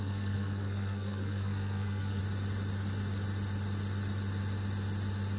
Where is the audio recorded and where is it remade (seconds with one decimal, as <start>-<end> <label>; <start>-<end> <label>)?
0.0-2.2 remade; 2.2-5.4 recorded